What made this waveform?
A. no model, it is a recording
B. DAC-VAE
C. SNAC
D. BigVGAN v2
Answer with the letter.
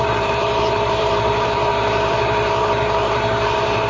D